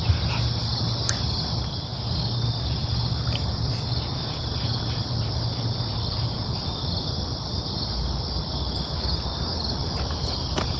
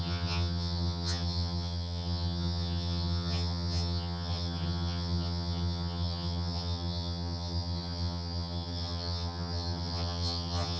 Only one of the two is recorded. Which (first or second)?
first